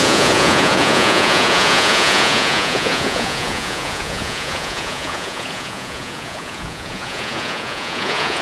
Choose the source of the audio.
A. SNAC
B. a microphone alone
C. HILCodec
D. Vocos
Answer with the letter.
D